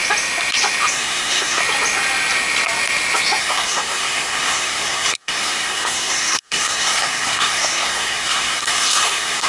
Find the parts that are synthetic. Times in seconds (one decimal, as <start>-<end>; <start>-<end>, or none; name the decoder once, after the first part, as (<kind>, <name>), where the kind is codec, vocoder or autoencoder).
0.9-1.6 (codec, SNAC); 3.4-9.5